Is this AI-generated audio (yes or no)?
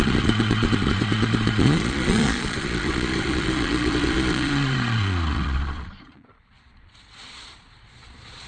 yes